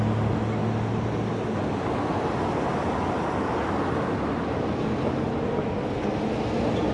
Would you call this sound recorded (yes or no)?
yes